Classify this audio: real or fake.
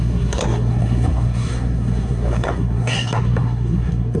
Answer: fake